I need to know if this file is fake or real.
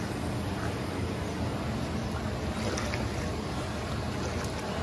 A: real